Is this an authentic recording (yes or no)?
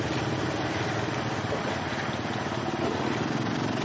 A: yes